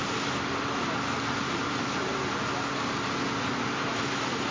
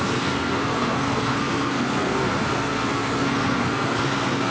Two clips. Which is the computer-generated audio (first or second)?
second